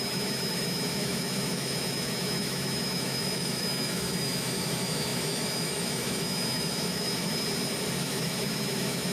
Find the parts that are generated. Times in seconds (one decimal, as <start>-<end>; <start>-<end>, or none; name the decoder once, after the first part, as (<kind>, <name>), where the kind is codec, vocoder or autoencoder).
0.0-7.3 (autoencoder, DAC-VAE); 8.0-9.1